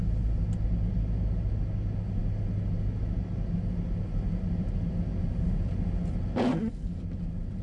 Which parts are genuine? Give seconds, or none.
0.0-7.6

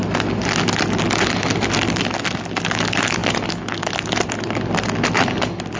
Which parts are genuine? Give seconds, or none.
0.0-5.8

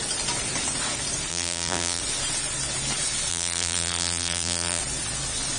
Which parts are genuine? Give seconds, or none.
0.0-1.3; 2.0-3.3; 4.8-5.6

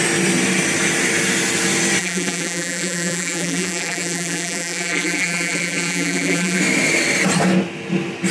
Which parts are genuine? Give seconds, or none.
0.0-2.0; 6.6-8.3

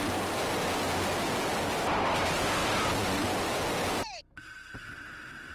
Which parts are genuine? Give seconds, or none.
0.0-5.5

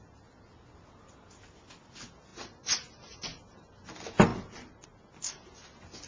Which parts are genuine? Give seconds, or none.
0.0-6.1

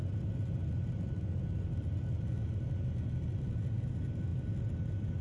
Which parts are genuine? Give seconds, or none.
0.0-5.2

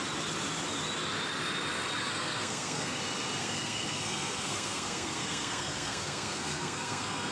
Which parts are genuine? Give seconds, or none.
0.0-2.0; 3.0-3.4